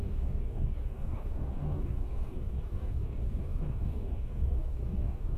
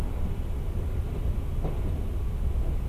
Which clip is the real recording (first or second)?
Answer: second